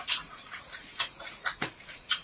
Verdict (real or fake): fake